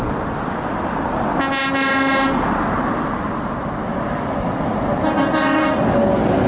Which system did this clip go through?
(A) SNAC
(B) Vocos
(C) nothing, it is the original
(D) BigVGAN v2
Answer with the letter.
C